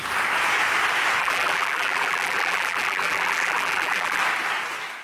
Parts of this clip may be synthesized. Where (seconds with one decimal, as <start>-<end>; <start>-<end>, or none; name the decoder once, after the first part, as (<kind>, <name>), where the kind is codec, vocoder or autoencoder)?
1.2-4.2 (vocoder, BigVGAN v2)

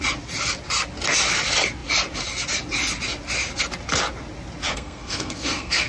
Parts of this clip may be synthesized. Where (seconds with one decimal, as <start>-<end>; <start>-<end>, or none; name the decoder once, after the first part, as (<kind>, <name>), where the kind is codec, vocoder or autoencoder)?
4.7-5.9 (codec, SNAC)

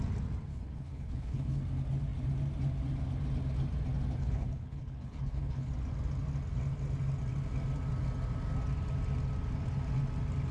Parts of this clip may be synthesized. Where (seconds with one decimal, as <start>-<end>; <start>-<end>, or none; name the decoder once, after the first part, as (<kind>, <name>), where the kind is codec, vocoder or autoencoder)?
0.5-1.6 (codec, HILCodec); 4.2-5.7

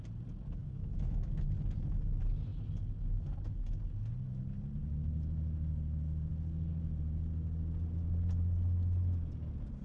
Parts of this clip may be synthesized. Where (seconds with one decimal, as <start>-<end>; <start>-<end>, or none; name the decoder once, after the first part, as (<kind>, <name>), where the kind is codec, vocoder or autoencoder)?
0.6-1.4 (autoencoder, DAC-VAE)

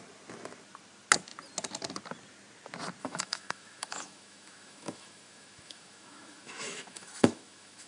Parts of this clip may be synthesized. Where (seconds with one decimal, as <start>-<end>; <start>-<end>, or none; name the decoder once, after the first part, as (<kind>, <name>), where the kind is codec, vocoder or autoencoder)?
3.0-7.9 (autoencoder, DAC-VAE)